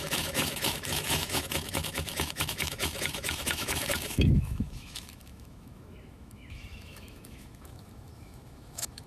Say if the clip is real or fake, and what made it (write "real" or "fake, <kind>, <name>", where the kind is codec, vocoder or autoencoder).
fake, autoencoder, DAC-VAE